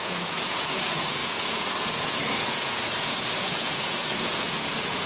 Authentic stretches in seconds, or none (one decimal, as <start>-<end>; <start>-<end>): none